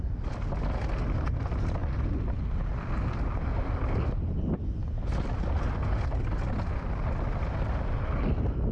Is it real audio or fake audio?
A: real